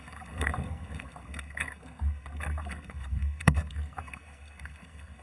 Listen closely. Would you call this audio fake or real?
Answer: fake